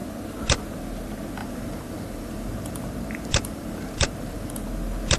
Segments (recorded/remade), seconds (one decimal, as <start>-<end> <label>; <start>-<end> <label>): 0.0-1.4 recorded; 1.4-4.5 remade; 4.5-5.2 recorded